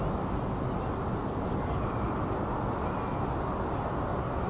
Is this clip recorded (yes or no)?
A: yes